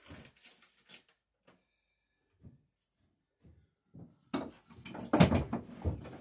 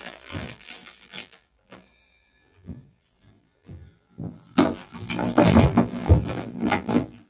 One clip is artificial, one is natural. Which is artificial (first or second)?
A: second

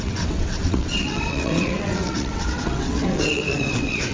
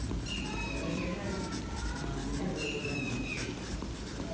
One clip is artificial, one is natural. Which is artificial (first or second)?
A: first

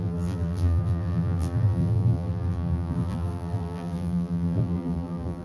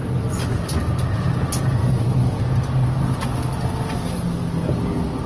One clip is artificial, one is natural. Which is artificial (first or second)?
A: first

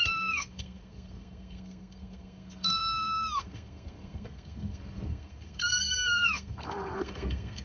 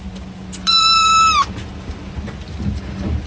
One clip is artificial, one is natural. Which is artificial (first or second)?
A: first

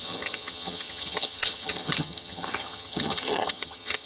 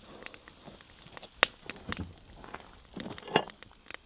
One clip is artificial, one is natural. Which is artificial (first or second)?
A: first